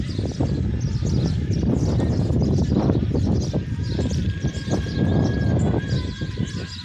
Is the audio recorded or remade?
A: recorded